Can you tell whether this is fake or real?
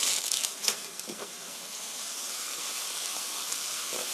fake